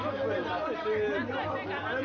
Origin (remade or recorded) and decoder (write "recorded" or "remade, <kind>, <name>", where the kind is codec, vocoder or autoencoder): recorded